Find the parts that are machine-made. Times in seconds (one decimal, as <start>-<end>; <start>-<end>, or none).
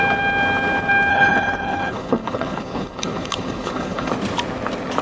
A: 1.1-4.1